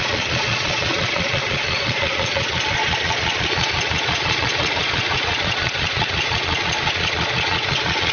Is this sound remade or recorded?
remade